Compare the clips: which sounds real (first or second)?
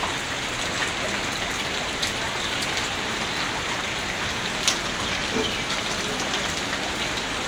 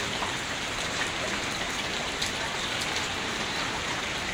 first